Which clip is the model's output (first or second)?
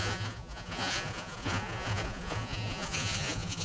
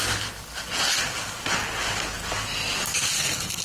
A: first